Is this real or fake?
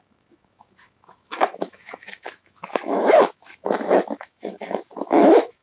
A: fake